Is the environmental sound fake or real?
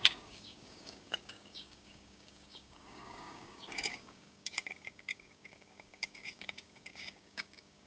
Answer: fake